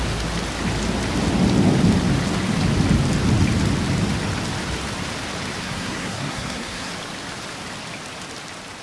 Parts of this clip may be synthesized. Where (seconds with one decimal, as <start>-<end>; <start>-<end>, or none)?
5.6-6.9